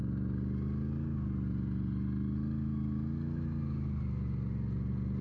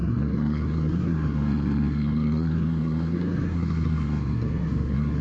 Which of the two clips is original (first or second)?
first